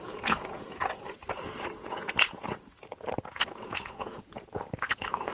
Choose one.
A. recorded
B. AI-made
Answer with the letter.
B